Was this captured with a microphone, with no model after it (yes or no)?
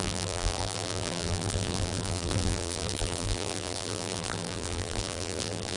no